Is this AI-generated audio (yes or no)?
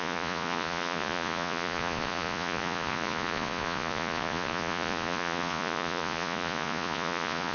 yes